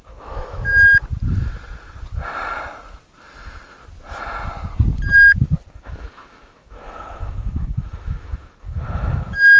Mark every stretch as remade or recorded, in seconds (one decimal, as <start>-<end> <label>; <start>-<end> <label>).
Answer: 0.0-0.7 remade; 0.7-5.7 recorded; 5.7-9.6 remade